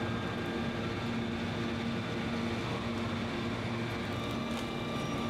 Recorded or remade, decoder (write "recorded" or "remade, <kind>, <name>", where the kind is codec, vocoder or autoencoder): recorded